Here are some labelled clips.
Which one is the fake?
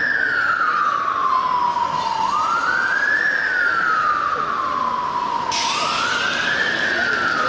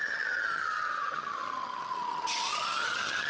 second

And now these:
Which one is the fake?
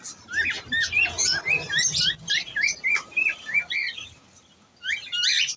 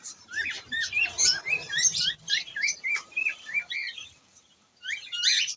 second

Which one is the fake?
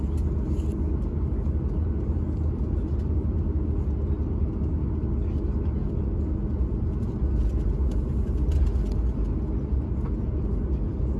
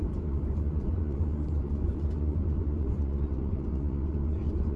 second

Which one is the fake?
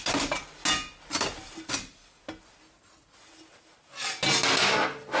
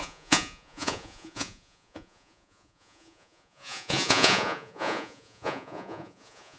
second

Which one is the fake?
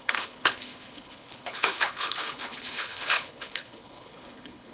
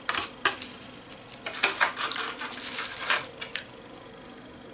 first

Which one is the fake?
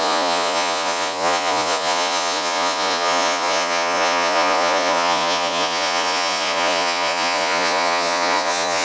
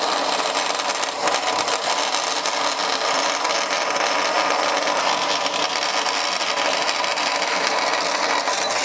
first